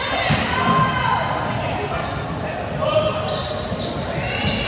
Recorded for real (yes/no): yes